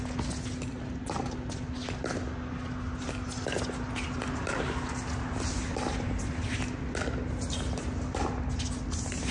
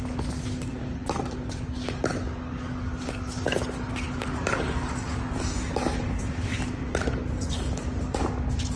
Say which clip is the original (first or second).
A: first